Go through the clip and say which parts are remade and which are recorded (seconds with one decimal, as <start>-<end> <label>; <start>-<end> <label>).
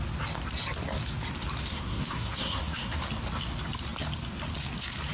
0.0-1.7 recorded; 1.7-3.0 remade; 3.0-5.1 recorded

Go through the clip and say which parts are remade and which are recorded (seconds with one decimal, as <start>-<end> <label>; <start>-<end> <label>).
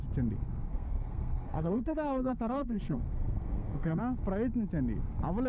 0.0-0.7 recorded; 0.7-4.0 remade; 4.0-5.5 recorded